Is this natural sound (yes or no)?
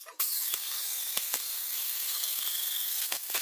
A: no